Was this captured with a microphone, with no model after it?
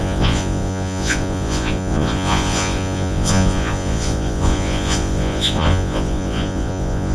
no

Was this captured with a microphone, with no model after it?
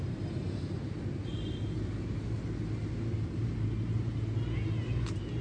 yes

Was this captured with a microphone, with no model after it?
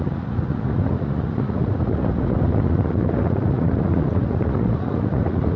no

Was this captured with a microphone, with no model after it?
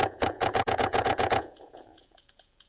no